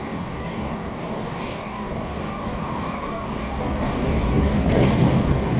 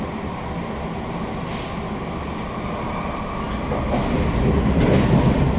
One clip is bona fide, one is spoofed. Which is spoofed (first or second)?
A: first